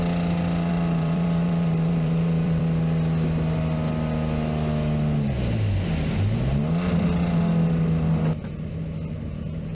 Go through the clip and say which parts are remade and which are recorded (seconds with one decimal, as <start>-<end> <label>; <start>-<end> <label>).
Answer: 0.0-0.7 recorded; 0.7-2.6 remade; 2.6-9.7 recorded